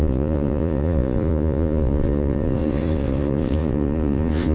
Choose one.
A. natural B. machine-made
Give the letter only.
B